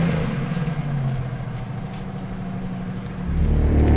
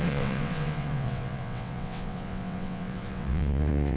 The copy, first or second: second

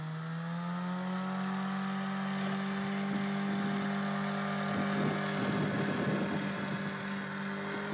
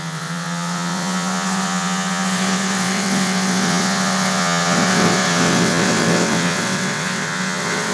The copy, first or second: second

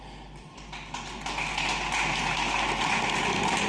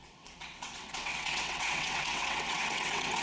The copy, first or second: second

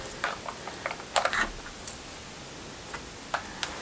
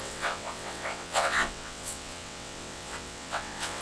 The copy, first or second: second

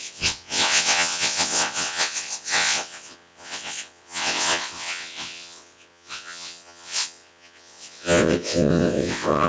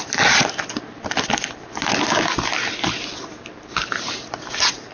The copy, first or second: first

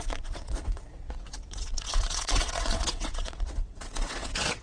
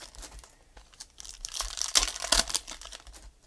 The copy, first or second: first